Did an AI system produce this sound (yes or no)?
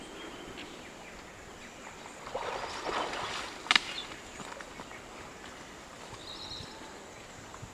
no